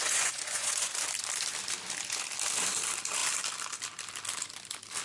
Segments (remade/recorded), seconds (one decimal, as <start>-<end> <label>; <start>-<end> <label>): 0.0-0.9 remade; 0.9-5.0 recorded